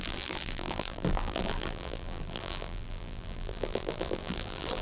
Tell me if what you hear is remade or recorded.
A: remade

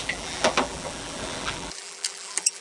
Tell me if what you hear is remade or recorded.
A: remade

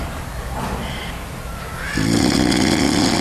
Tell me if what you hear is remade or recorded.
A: recorded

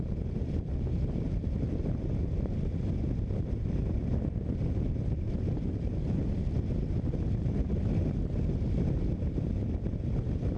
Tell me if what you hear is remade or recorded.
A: recorded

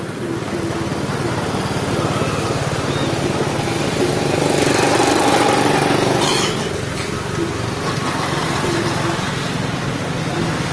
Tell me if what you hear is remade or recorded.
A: recorded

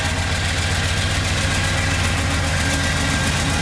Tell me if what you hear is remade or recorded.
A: recorded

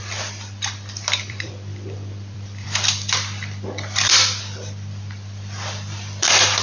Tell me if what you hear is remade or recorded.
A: remade